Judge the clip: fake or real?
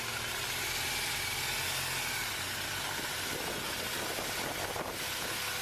real